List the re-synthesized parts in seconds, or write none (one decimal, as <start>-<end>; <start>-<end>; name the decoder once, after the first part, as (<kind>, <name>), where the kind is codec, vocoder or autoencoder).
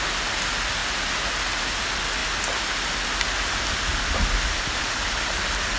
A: none